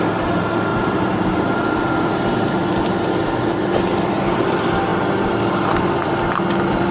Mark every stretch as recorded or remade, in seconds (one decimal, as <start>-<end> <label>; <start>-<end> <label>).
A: 0.0-0.7 recorded; 0.7-4.4 remade; 4.4-6.9 recorded